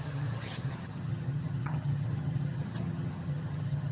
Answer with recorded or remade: remade